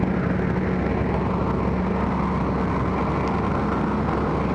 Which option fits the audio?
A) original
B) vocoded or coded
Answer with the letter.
A